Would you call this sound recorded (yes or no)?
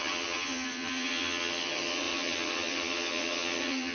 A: no